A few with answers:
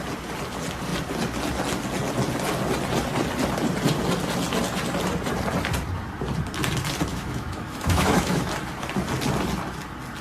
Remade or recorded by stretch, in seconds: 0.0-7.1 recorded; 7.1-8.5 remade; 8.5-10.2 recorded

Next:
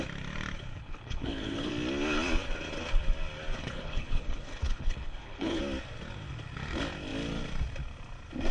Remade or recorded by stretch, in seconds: 0.0-0.8 recorded; 0.8-1.7 remade; 1.7-3.6 recorded; 3.6-5.6 remade; 5.6-8.5 recorded